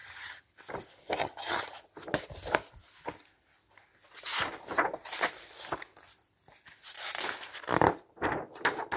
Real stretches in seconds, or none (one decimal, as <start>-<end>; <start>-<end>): 0.5-1.2; 1.8-9.0